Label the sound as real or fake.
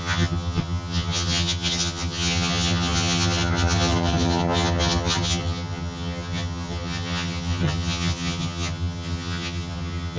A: fake